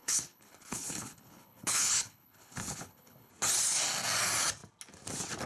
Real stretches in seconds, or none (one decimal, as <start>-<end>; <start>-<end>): 3.3-5.5